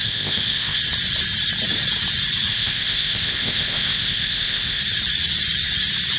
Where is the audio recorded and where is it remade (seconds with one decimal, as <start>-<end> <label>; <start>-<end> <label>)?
0.0-0.8 remade; 0.8-2.5 recorded; 2.5-4.8 remade; 4.8-6.2 recorded